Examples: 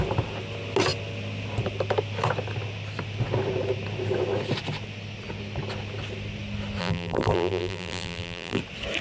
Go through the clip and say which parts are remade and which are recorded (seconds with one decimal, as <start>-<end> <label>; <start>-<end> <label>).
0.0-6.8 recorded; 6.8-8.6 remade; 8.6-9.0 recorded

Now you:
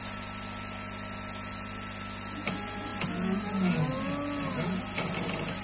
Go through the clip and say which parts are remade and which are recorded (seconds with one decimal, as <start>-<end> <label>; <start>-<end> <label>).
0.0-5.6 recorded

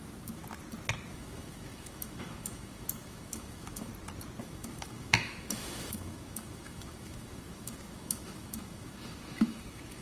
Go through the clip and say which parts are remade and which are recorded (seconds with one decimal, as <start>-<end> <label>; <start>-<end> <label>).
0.0-0.4 remade; 0.4-1.1 recorded; 1.1-3.9 remade; 3.9-4.4 recorded; 4.4-10.0 remade

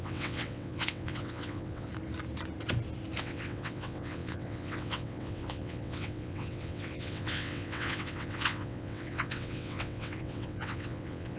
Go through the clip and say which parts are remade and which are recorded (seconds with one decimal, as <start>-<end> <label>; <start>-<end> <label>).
0.0-1.9 remade; 1.9-3.2 recorded; 3.2-11.4 remade

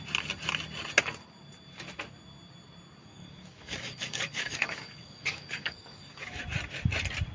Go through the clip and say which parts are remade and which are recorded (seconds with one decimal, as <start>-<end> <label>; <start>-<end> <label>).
0.0-3.0 recorded; 3.0-6.4 remade; 6.4-7.3 recorded

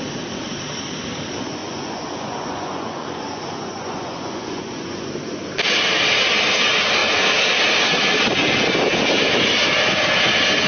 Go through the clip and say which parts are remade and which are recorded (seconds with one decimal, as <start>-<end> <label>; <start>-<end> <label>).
0.0-1.6 recorded; 1.6-5.1 remade; 5.1-10.7 recorded